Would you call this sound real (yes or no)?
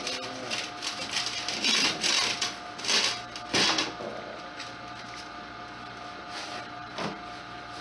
yes